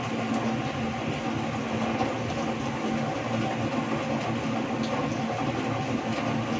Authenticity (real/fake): real